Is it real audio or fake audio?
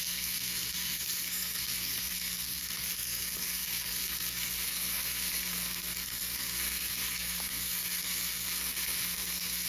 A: fake